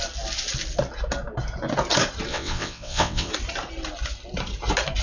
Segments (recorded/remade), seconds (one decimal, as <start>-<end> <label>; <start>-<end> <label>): 0.0-2.3 recorded; 2.3-3.3 remade; 3.3-5.0 recorded